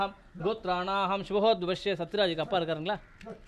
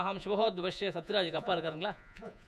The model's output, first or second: second